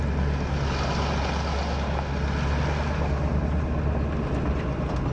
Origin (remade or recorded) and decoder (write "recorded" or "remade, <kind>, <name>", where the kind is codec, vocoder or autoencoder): recorded